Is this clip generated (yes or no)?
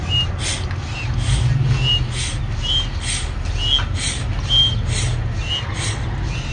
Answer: no